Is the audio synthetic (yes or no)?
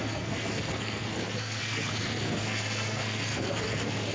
yes